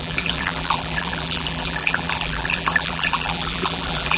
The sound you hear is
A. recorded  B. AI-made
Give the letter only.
B